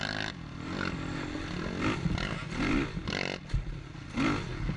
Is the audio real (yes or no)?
yes